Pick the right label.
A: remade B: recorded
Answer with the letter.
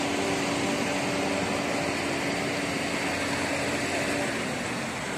B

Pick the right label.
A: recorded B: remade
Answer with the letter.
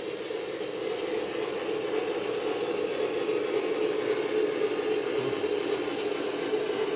A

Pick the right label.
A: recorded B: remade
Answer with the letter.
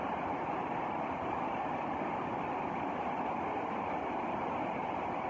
A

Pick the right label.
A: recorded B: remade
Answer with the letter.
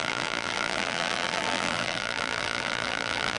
B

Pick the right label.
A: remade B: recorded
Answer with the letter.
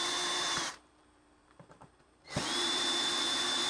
A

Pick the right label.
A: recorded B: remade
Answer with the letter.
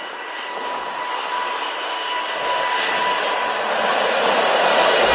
A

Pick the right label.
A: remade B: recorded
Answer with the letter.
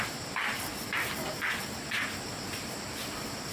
A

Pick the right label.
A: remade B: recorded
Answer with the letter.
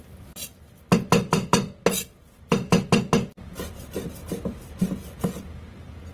B